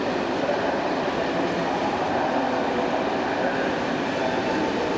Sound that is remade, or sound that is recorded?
recorded